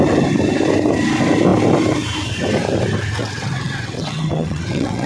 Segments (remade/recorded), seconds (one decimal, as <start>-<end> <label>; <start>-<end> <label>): 0.0-3.2 recorded; 3.2-5.1 remade